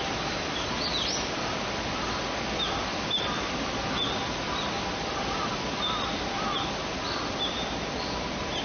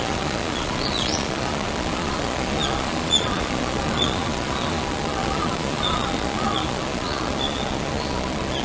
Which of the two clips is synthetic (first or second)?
second